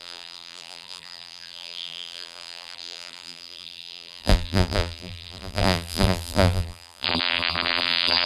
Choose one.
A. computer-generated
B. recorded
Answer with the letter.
A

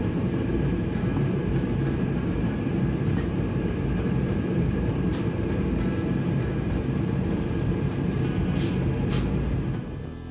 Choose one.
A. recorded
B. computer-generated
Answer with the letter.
B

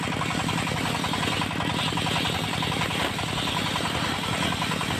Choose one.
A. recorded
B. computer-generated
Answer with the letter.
A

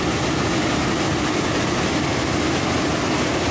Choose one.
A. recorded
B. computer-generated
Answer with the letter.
A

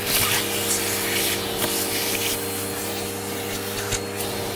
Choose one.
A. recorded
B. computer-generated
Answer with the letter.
A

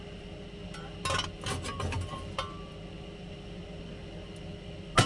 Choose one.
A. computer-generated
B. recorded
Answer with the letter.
B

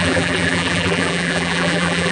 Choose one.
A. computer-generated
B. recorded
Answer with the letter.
A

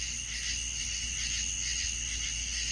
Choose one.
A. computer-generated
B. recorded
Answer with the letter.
B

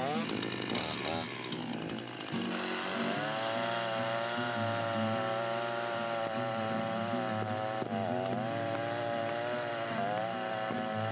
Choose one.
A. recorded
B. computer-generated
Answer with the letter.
A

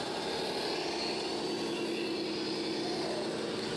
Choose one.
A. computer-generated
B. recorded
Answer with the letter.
B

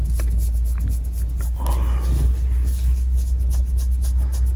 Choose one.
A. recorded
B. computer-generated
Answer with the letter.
A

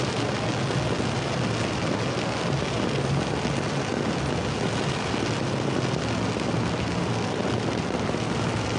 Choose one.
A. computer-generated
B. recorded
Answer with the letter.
B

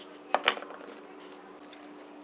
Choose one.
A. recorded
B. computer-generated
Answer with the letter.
A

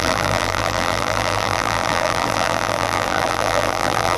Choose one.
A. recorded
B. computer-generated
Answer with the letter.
B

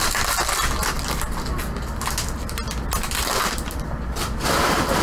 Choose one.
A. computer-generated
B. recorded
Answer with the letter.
A